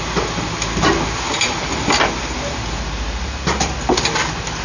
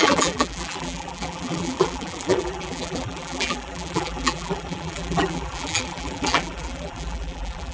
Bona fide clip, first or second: first